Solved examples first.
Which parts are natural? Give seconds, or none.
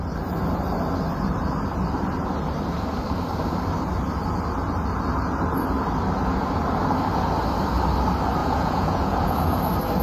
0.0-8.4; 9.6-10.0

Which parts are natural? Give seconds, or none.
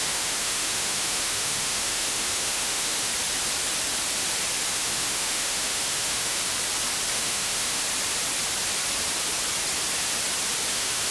3.1-4.7; 6.4-7.1; 7.8-10.7